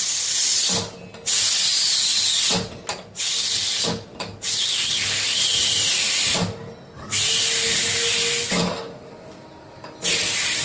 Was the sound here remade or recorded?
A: recorded